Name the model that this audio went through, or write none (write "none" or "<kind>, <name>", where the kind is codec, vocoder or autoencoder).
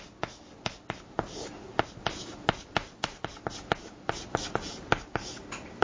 none